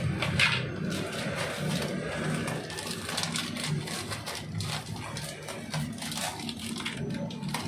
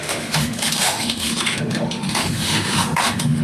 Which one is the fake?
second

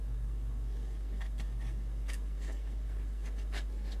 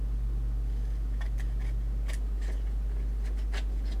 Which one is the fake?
first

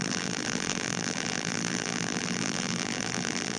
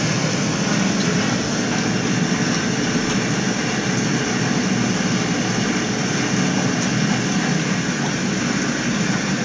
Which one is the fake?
first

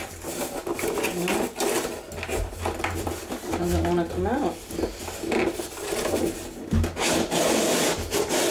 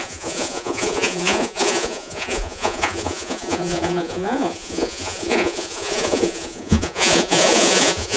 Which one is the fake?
second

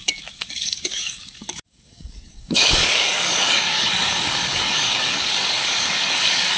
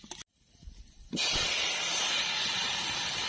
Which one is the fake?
first